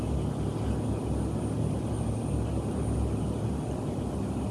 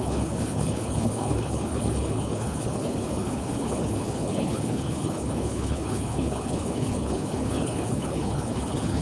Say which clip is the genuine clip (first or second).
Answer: first